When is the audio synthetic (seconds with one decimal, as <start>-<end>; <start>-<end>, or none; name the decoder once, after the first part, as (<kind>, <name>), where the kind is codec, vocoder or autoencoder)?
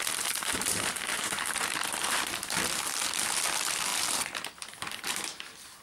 1.1-2.2 (vocoder, BigVGAN v2)